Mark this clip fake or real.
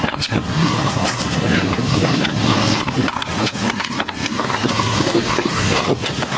fake